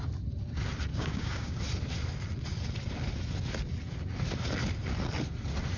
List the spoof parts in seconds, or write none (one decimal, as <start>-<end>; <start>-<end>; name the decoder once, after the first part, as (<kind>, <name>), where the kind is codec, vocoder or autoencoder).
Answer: 0.9-1.6 (codec, DAC)